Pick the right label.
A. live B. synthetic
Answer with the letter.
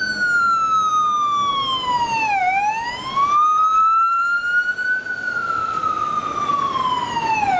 A